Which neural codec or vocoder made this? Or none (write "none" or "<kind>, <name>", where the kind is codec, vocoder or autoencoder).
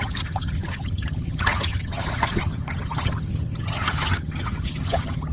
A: vocoder, HiFi-GAN